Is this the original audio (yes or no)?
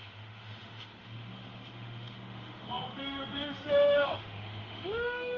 no